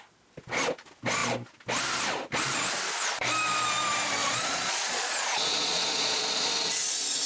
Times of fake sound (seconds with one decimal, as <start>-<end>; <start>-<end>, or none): 4.2-6.5